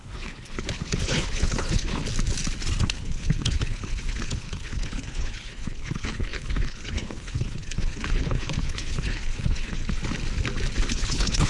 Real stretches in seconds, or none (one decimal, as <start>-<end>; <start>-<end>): 2.0-2.8; 10.0-10.9

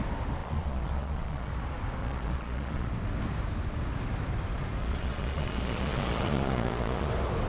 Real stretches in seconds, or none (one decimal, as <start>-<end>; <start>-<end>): 0.0-0.4; 1.5-2.0; 2.9-4.8; 7.1-7.5

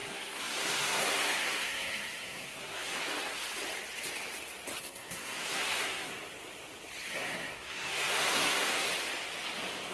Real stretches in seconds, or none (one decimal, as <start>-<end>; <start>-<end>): 3.4-4.8; 6.1-7.1; 8.9-9.9